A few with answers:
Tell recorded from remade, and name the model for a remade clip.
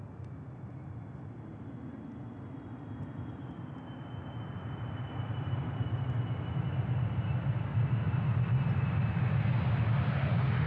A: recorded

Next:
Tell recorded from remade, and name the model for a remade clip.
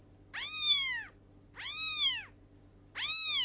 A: recorded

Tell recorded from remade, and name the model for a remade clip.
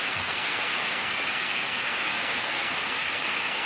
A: remade, codec, SNAC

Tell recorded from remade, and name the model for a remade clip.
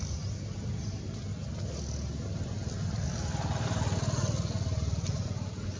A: recorded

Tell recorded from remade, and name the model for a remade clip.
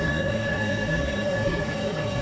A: remade, codec, SNAC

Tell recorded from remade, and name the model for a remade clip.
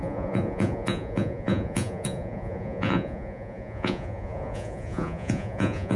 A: remade, vocoder, Vocos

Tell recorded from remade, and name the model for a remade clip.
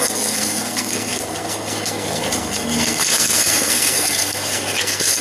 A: remade, codec, SNAC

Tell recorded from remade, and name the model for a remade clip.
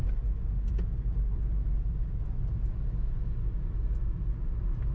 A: recorded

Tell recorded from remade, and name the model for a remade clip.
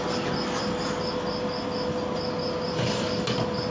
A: recorded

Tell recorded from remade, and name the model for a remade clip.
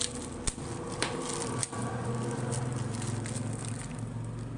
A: recorded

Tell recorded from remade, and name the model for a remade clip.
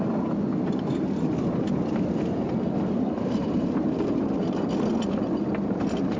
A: recorded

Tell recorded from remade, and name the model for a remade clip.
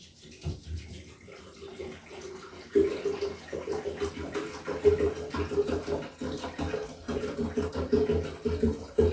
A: recorded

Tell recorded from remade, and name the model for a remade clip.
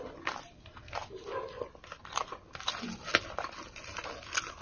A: recorded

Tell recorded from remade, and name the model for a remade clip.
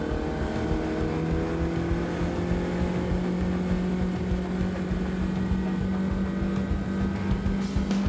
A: recorded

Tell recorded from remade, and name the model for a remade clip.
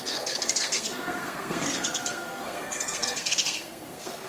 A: remade, codec, SNAC